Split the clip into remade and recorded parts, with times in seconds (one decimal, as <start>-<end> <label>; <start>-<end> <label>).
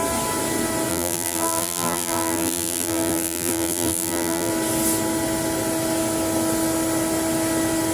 0.0-0.9 recorded; 0.9-4.5 remade; 4.5-7.9 recorded